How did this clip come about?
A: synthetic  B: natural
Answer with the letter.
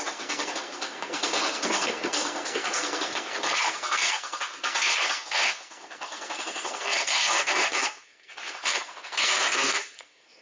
A